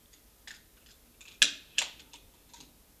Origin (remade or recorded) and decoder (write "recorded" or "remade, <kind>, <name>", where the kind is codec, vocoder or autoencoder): recorded